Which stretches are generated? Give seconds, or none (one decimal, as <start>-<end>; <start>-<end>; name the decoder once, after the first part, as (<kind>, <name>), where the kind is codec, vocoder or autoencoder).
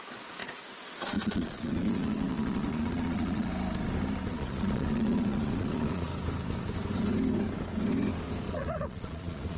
0.0-0.4 (vocoder, Vocos); 1.0-3.5; 4.3-6.1; 8.5-9.6